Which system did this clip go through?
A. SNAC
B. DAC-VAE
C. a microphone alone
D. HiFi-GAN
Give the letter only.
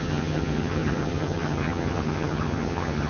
D